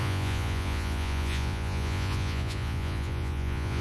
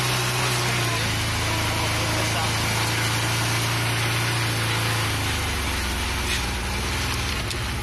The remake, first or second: first